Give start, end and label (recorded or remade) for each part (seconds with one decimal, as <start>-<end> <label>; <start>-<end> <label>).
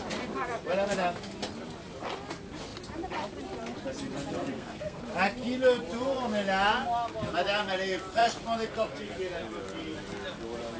0.0-4.5 recorded; 4.5-5.0 remade; 5.0-10.8 recorded